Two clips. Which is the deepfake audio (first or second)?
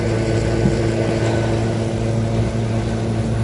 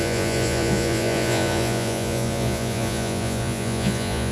second